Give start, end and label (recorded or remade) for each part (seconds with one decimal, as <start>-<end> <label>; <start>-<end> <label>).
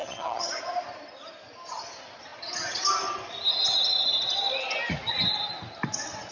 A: 0.0-0.5 remade; 0.5-6.3 recorded